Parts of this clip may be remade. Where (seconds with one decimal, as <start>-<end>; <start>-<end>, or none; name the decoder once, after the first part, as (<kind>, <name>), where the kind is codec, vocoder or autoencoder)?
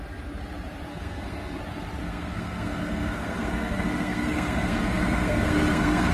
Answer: 0.9-1.6 (codec, SNAC); 2.0-6.1